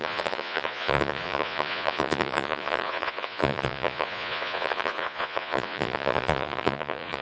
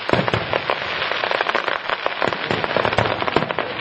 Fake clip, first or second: first